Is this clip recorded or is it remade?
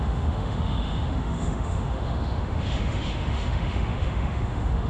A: remade